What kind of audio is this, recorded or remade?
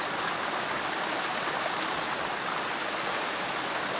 recorded